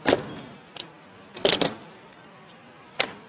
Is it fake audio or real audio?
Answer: real